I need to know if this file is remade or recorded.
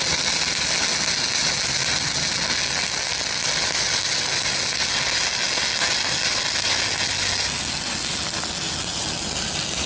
recorded